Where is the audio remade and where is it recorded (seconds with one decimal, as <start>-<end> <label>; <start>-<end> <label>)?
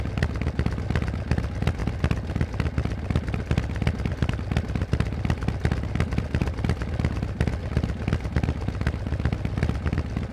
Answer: 0.0-10.3 recorded